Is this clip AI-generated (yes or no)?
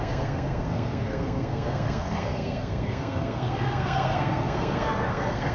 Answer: yes